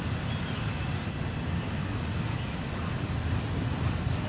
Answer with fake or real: real